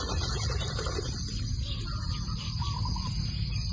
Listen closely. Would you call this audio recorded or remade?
recorded